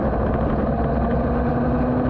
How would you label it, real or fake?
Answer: real